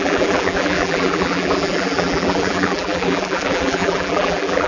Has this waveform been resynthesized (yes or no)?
yes